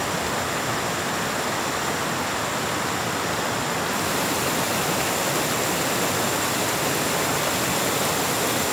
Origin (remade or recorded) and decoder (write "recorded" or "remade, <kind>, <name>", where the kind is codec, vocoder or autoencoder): recorded